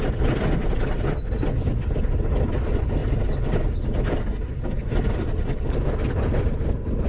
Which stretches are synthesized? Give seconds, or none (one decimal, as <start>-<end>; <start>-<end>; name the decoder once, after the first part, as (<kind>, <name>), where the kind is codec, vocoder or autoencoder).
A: none